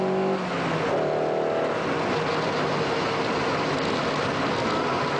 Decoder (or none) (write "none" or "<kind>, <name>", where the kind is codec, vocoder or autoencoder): none